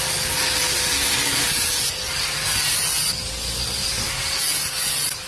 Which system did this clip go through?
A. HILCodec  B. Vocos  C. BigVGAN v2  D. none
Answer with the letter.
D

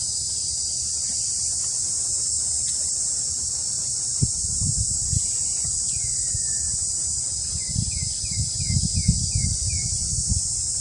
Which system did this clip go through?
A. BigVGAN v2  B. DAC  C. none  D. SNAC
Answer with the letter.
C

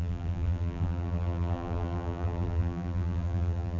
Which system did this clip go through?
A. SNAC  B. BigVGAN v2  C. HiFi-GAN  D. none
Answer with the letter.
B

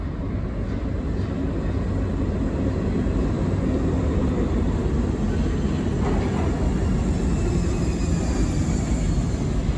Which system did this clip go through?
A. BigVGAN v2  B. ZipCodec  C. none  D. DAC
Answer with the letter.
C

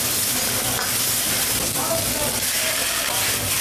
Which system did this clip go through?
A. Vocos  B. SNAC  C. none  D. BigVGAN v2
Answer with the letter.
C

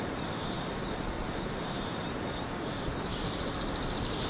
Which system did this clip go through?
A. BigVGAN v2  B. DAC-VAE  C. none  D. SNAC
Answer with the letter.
A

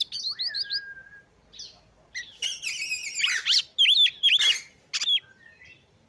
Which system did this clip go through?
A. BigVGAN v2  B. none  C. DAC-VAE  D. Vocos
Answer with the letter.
B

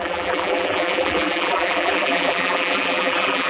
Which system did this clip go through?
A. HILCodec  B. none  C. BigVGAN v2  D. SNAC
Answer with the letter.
C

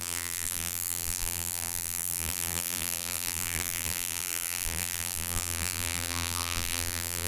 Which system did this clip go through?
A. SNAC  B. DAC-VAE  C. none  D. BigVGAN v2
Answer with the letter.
D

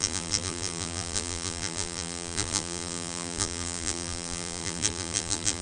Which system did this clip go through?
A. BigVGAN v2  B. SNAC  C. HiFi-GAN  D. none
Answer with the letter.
A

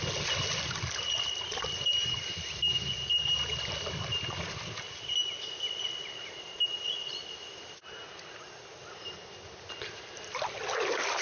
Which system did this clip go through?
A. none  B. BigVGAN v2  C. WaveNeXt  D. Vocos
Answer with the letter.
A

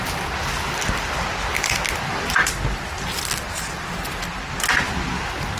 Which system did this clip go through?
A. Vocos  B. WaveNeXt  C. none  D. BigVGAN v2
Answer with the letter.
C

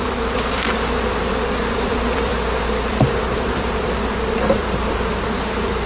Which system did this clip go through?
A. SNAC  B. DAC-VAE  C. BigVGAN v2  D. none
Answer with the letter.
C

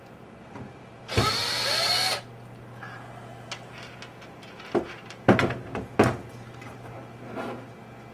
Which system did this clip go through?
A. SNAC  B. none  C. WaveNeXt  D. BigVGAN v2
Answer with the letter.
B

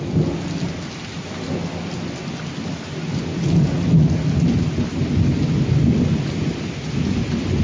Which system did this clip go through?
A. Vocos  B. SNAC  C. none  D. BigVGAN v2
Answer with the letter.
C